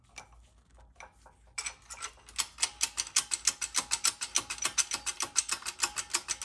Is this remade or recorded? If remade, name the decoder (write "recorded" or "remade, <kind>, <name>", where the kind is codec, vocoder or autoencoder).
recorded